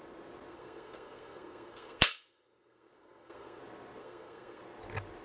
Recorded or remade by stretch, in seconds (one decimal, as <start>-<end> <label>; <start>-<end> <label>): 0.0-0.5 recorded; 0.5-3.6 remade; 3.6-4.0 recorded; 4.0-4.6 remade; 4.6-5.2 recorded